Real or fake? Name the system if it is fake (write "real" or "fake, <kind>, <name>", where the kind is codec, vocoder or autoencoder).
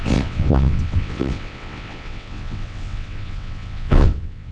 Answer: fake, vocoder, WaveNeXt